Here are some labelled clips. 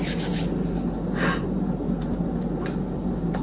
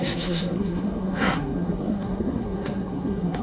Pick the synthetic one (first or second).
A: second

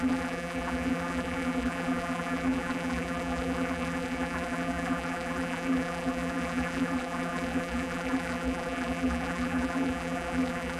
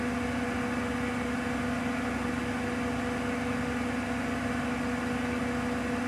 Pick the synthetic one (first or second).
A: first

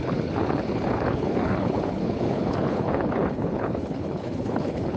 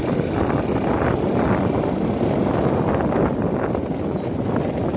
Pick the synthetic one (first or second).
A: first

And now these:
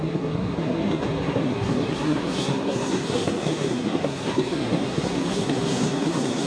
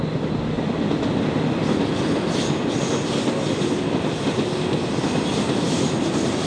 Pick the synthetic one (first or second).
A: first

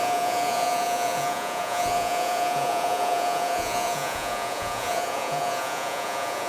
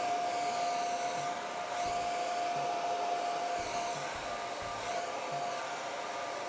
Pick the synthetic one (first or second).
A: first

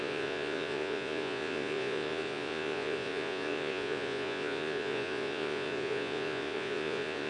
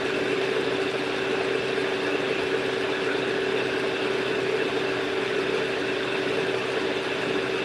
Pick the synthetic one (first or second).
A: first